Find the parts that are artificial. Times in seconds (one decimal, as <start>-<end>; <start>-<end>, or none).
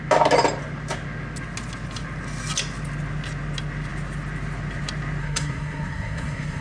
5.2-6.6